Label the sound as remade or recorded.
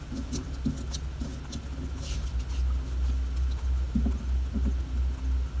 recorded